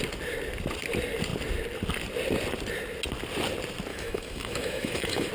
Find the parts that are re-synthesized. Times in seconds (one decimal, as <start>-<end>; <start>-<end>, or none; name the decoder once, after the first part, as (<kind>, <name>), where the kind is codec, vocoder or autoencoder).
3.9-5.3 (autoencoder, DAC-VAE)